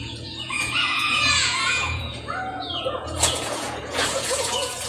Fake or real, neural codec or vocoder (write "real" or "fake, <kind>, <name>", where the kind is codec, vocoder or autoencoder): fake, vocoder, Vocos